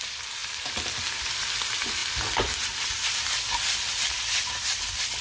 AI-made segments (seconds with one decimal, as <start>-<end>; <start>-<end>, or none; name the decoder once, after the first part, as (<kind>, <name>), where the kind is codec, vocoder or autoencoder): none